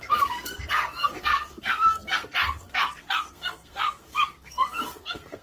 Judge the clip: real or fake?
fake